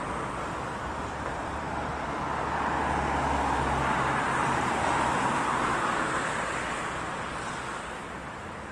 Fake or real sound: real